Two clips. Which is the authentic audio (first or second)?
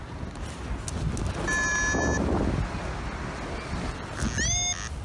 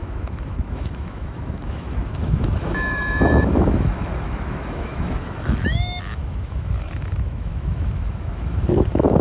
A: first